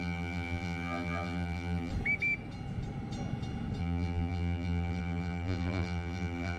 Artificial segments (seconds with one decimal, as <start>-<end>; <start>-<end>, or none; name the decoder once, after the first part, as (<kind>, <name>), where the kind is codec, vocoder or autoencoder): 0.0-1.9 (vocoder, BigVGAN v2); 3.8-6.6